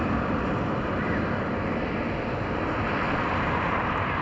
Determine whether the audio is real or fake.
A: real